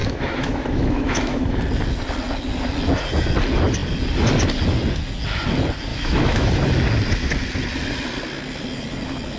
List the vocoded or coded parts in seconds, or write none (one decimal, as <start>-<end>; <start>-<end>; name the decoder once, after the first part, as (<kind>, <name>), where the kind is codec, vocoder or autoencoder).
0.0-1.5 (autoencoder, DAC-VAE); 5.9-6.5